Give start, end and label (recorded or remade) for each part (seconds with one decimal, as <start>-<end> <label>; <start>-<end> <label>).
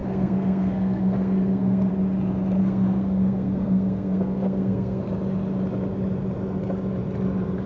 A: 0.0-1.9 remade; 1.9-2.6 recorded; 2.6-5.0 remade; 5.0-7.7 recorded